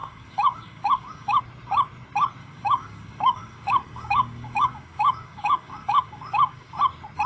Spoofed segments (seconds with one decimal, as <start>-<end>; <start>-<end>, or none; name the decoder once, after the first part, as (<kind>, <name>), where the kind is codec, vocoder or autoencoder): 0.0-1.4 (codec, DAC); 2.4-6.8

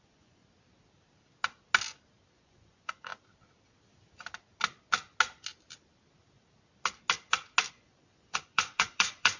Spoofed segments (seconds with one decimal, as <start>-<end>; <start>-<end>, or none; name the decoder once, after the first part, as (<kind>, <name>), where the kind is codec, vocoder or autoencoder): 0.0-0.4 (vocoder, Vocos); 2.3-3.1; 7.7-9.4

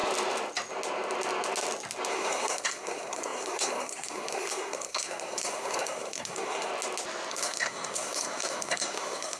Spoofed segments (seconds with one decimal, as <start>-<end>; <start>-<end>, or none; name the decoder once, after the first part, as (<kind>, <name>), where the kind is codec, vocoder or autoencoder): 2.1-6.7 (codec, SNAC); 7.3-9.4

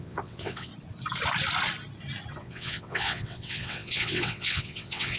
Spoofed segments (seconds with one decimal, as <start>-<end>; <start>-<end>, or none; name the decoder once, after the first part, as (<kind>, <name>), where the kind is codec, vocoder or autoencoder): 0.0-0.7 (vocoder, WaveNeXt); 2.4-5.2

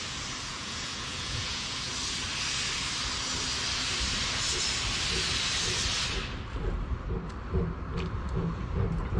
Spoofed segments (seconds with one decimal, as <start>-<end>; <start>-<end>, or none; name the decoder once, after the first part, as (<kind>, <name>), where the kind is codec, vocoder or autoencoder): 0.5-1.9 (vocoder, Vocos)

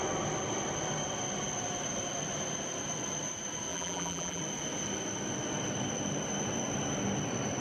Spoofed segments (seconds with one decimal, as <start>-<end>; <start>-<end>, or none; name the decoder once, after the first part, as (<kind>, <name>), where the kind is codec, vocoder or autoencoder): 3.7-4.4 (vocoder, BigVGAN v2)

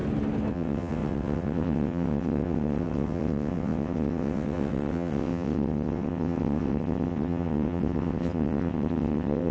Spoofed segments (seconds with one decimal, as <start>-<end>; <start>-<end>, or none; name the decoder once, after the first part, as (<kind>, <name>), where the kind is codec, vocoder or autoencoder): 0.5-9.5 (vocoder, WaveNeXt)

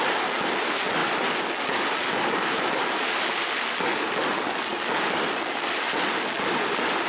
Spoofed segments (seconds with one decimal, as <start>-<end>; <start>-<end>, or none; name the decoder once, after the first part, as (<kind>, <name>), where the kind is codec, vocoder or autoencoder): none